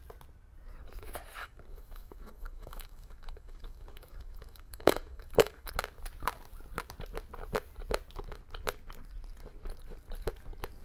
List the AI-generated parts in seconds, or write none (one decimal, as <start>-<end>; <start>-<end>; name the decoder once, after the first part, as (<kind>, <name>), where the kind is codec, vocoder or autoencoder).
1.4-5.7 (codec, DAC)

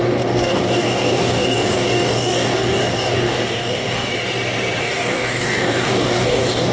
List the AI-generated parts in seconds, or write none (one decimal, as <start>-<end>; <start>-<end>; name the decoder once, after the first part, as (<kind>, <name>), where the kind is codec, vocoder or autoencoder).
0.0-4.1 (codec, DAC); 4.8-6.7

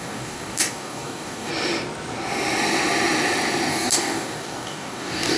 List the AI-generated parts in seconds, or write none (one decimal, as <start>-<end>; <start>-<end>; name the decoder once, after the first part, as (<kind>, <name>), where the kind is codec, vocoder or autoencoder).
0.0-1.5 (codec, DAC); 3.7-5.4

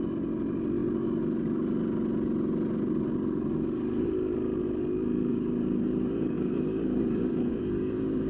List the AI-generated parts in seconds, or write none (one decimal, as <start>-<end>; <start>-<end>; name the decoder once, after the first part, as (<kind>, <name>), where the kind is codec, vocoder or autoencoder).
5.3-8.3 (codec, DAC)